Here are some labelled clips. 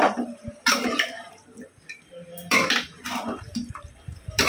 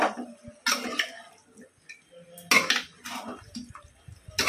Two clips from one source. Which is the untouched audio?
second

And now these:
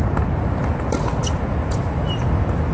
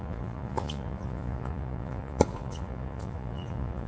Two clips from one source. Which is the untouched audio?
first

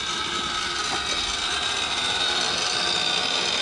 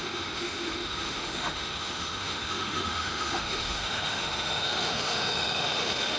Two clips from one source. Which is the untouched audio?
first